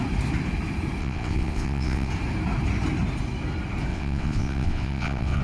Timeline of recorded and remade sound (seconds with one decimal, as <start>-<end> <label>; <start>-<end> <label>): 0.0-1.0 recorded; 1.0-2.1 remade; 2.1-3.9 recorded; 3.9-5.4 remade